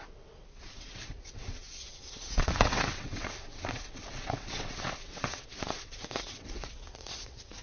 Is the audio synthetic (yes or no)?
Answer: yes